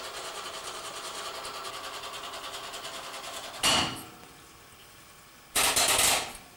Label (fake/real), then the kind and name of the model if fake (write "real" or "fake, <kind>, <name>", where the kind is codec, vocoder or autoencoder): real